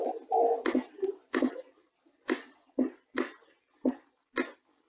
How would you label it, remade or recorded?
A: recorded